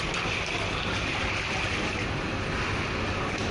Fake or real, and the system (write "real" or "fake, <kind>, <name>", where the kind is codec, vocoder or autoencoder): real